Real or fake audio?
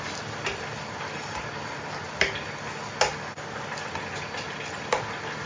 real